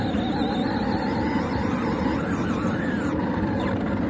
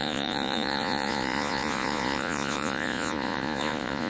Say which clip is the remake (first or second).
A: second